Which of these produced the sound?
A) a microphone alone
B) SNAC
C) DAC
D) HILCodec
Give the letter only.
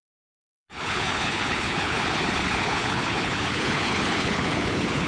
D